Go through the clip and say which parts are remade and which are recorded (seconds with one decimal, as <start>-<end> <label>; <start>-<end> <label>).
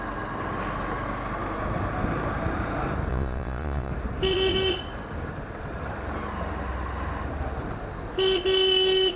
0.0-3.1 recorded; 3.1-3.9 remade; 3.9-9.2 recorded